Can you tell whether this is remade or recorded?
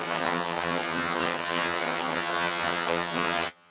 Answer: remade